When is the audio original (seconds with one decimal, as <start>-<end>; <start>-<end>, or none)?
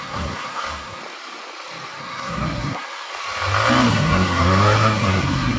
1.0-2.0; 3.1-3.9